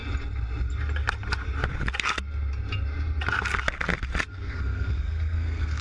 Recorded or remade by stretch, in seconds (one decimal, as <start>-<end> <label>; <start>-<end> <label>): 0.0-4.3 recorded; 4.3-5.8 remade